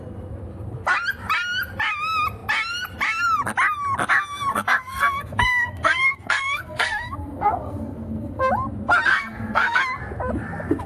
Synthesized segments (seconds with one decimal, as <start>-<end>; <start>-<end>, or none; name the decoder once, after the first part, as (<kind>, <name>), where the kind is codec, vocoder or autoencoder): 4.5-8.5 (codec, SNAC); 9.1-9.8